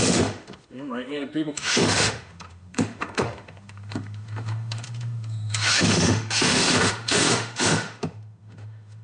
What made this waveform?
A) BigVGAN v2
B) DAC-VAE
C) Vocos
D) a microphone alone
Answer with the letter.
B